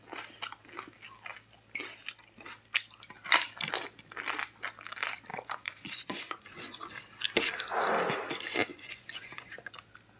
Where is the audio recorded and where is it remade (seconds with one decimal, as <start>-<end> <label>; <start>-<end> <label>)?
0.0-5.3 recorded; 5.3-6.9 remade; 6.9-8.7 recorded; 8.7-9.7 remade; 9.7-10.2 recorded